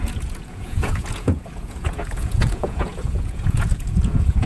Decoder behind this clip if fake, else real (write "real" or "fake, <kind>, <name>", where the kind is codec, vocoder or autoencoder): fake, vocoder, Vocos